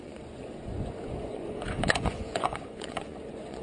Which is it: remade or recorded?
remade